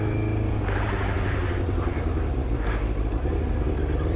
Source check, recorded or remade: recorded